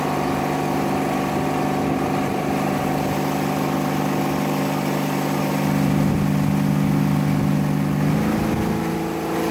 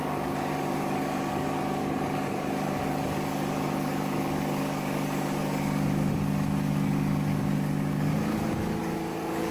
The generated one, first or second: second